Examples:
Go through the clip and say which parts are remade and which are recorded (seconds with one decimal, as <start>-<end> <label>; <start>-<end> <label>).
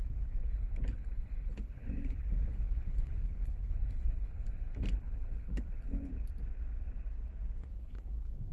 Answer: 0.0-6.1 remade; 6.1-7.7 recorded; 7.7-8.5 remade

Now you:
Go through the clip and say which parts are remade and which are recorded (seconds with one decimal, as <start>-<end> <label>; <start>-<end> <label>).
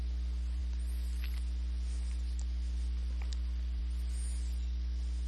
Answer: 0.0-5.3 recorded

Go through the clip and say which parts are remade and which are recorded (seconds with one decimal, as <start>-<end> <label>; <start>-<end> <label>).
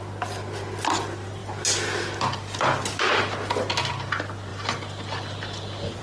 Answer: 0.0-6.0 recorded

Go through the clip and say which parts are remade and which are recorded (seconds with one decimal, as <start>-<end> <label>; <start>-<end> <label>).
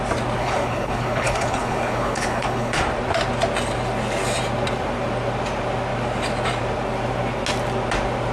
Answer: 0.0-0.4 recorded; 0.4-2.8 remade; 2.8-8.3 recorded